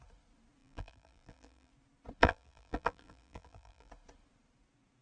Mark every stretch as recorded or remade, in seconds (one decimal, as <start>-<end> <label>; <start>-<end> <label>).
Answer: 0.0-0.6 recorded; 0.6-1.7 remade; 1.7-2.2 recorded; 2.2-3.9 remade; 3.9-5.0 recorded